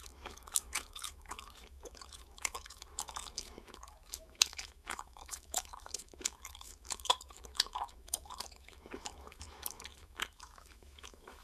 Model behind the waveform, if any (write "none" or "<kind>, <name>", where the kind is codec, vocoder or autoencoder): autoencoder, DAC-VAE